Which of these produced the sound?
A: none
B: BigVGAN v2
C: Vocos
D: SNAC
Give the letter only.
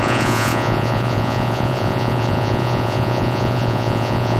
C